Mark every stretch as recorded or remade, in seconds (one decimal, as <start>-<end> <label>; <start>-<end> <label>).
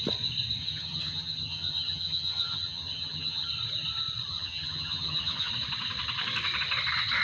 0.0-0.6 recorded; 0.6-3.5 remade; 3.5-4.3 recorded; 4.3-5.5 remade; 5.5-7.2 recorded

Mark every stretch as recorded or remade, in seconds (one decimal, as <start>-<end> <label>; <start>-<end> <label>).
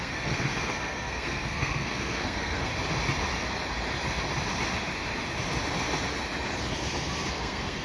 0.0-2.7 remade; 2.7-7.3 recorded; 7.3-7.8 remade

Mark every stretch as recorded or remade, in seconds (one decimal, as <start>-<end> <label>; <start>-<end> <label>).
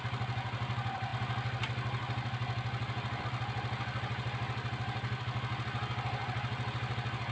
0.0-7.3 recorded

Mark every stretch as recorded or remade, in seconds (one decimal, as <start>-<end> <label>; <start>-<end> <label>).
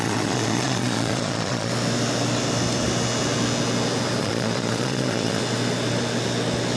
0.0-1.7 remade; 1.7-4.2 recorded; 4.2-5.4 remade; 5.4-6.8 recorded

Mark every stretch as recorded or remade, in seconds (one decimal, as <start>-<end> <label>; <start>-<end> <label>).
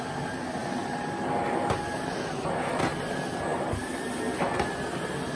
0.0-5.4 recorded